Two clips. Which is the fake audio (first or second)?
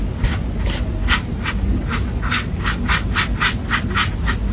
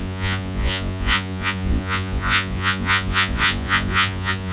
second